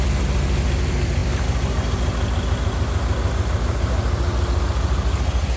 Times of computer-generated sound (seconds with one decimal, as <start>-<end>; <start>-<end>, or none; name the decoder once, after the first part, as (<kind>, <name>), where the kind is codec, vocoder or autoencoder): none